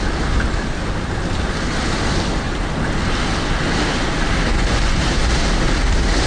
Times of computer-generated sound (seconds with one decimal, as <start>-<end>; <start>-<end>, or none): 4.5-5.0